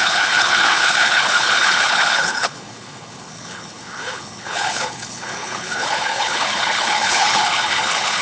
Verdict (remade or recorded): remade